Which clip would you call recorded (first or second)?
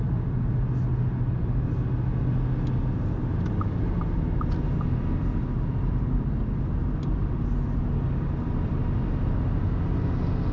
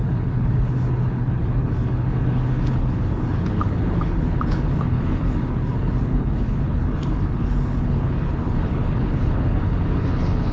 first